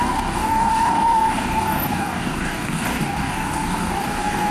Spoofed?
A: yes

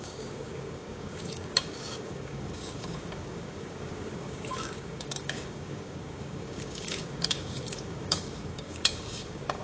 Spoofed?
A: yes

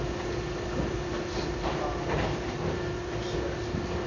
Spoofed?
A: no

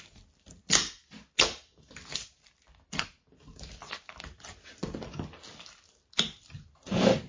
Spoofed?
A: no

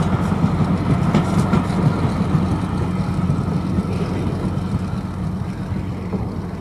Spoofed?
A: no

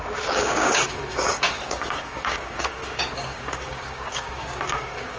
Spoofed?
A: yes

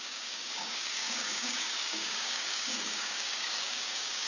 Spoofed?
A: yes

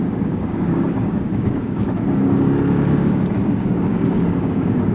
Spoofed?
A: yes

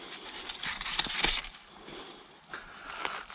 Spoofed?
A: no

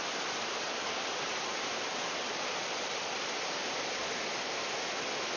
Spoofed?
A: no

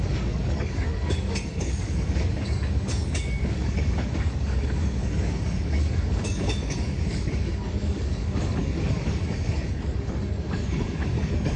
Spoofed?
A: yes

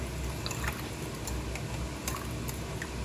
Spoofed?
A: no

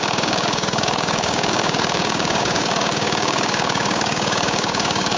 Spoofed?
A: yes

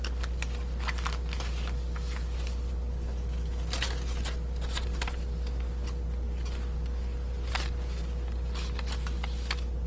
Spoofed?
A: no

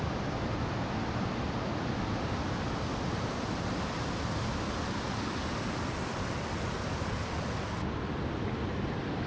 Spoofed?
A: no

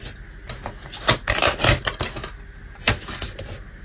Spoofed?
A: no